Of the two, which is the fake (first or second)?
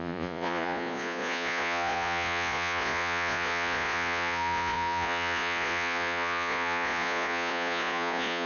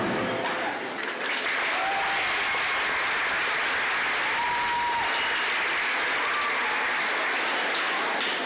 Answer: first